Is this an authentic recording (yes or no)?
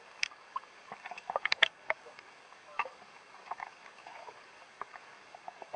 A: no